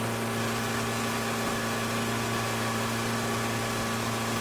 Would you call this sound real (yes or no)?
yes